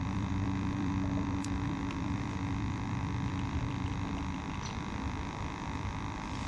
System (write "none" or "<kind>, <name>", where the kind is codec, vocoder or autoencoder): vocoder, BigVGAN v2